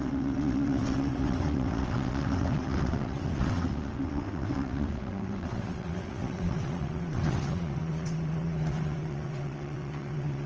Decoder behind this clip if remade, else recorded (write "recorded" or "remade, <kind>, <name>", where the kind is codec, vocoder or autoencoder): remade, vocoder, WaveNeXt